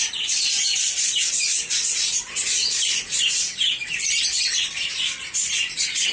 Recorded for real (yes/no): no